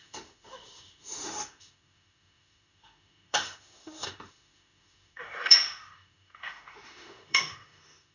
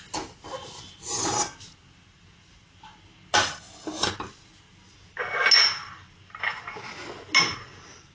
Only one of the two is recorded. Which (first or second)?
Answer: second